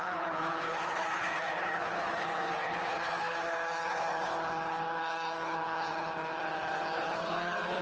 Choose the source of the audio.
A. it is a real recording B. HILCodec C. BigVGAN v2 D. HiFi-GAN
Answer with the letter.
B